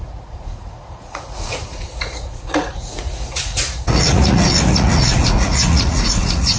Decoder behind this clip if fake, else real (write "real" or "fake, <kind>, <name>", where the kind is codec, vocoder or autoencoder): fake, vocoder, Vocos